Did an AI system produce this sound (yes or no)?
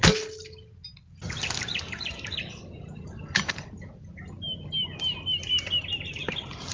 no